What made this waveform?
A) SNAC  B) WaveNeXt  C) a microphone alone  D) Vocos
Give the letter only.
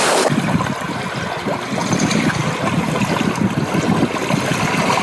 C